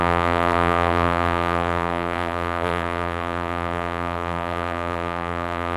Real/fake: fake